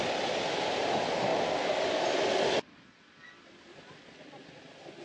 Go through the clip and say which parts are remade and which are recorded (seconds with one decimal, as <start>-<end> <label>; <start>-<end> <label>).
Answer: 0.0-5.0 recorded